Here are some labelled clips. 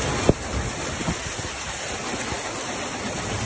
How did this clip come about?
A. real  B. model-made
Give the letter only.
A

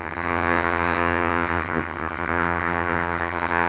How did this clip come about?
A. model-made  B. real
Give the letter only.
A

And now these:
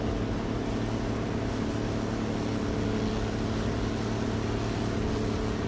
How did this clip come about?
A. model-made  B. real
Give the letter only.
B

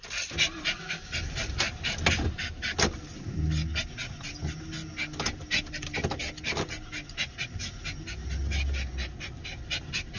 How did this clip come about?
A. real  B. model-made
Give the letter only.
A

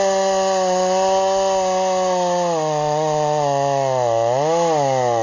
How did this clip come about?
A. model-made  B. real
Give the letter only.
B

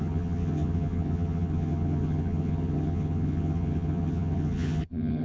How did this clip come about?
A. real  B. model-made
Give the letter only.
B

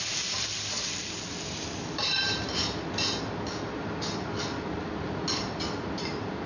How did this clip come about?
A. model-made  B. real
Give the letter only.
B